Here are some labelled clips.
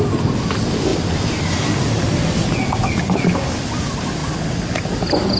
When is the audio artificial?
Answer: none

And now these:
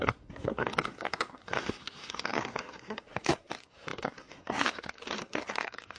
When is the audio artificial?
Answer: 0.0-6.0 (codec, SNAC)